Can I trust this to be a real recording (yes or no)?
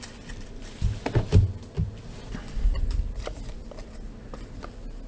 yes